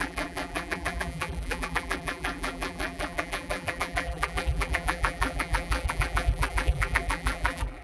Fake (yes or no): yes